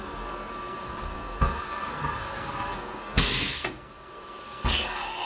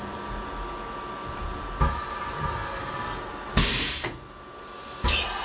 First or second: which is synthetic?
first